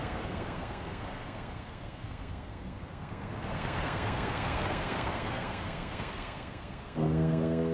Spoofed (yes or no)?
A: yes